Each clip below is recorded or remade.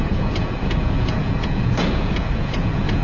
remade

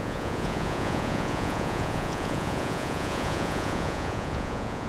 remade